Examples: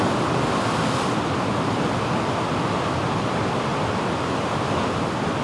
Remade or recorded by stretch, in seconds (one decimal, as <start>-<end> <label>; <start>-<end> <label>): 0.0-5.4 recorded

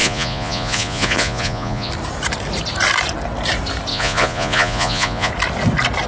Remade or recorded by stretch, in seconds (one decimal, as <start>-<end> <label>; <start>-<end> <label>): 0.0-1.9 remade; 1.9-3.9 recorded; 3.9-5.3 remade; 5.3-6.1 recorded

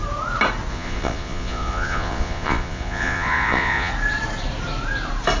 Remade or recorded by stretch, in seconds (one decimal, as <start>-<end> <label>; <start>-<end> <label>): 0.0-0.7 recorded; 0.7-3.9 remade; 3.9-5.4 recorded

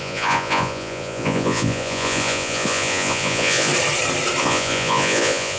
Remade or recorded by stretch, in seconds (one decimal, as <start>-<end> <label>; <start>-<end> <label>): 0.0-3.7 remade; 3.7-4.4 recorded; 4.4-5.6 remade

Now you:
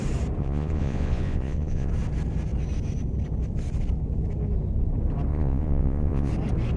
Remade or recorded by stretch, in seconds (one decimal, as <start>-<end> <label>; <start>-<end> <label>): 0.0-0.4 recorded; 0.4-1.9 remade; 1.9-5.3 recorded; 5.3-6.3 remade; 6.3-6.8 recorded

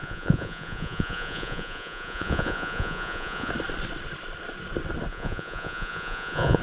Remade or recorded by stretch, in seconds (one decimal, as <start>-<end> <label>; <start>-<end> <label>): 0.0-3.5 remade; 3.5-5.1 recorded; 5.1-6.6 remade

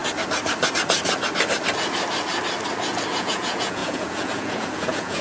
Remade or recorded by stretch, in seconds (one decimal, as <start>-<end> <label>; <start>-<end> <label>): 0.0-3.1 recorded; 3.1-5.2 remade